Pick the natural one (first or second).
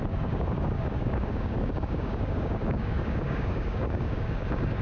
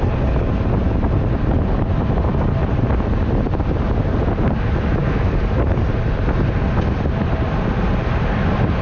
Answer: second